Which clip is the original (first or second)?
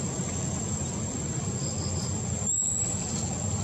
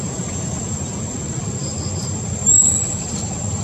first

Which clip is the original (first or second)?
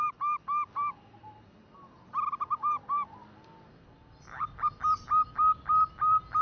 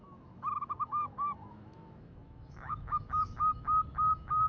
first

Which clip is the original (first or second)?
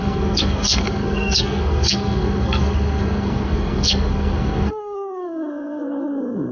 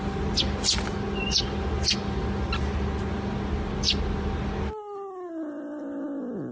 second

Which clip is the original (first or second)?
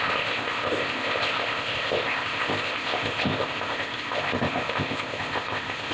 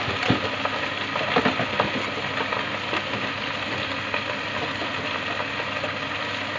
second